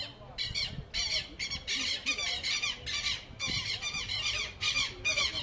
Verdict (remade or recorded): recorded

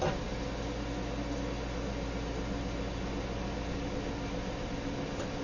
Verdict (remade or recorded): recorded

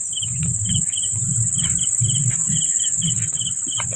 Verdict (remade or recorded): remade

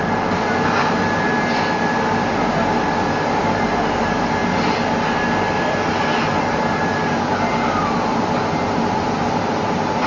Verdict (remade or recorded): recorded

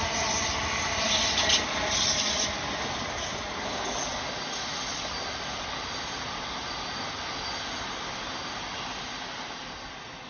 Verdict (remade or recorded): recorded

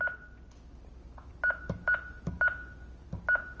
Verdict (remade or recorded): recorded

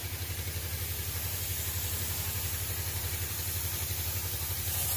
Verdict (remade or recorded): remade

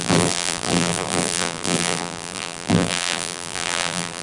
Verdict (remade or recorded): remade